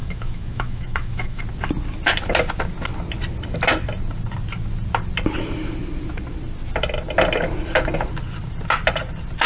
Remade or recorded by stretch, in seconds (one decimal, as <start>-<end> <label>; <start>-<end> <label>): 0.0-1.4 remade; 1.4-9.5 recorded